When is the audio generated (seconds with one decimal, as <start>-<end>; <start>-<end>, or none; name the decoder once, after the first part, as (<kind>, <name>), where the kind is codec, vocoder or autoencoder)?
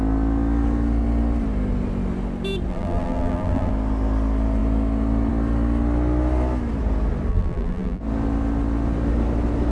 2.7-3.7 (vocoder, BigVGAN v2); 7.3-8.0